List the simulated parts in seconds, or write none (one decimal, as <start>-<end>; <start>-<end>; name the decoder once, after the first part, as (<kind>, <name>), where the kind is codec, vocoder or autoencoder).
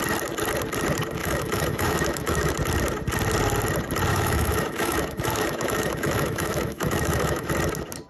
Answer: 1.2-2.5 (autoencoder, DAC-VAE); 4.1-7.5